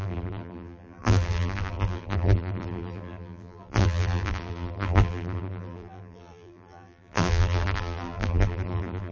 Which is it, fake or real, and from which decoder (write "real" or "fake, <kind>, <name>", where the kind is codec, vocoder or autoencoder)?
fake, vocoder, BigVGAN v2